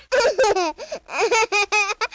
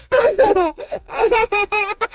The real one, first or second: first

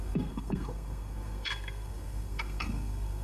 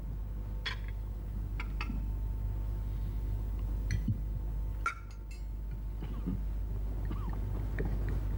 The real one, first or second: second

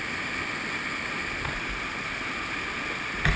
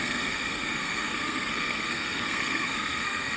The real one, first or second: first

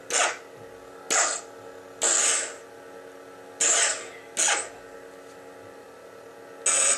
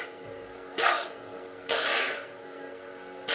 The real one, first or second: first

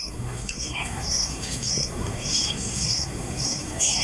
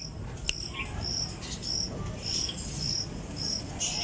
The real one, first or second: second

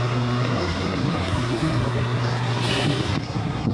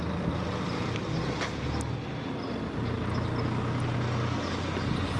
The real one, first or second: second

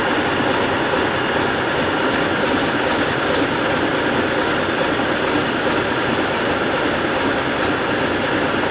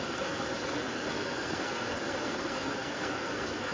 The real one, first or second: first